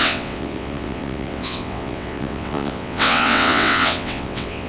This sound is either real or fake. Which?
fake